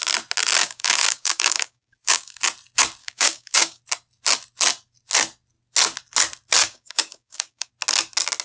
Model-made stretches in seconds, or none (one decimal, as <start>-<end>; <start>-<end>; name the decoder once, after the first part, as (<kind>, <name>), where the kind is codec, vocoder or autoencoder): 0.6-2.4 (codec, DAC); 3.0-3.8; 6.6-7.7